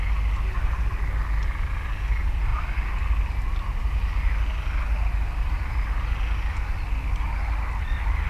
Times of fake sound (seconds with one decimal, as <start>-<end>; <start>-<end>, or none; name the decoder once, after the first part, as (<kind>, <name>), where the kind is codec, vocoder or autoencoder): none